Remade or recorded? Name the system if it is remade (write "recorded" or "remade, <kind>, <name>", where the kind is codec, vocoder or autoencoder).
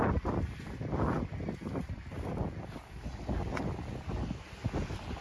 recorded